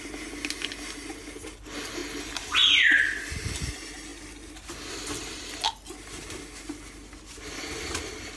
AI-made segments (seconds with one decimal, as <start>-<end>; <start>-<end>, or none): none